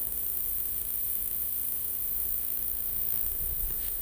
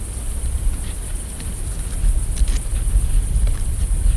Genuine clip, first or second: second